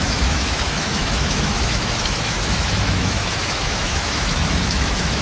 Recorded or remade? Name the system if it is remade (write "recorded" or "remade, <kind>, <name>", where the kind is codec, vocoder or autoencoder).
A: remade, autoencoder, DAC-VAE